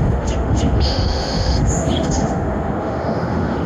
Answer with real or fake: fake